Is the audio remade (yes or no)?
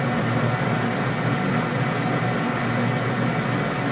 no